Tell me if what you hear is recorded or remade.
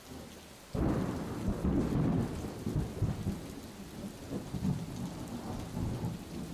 recorded